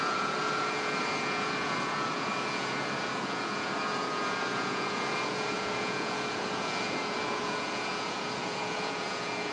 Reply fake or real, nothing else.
fake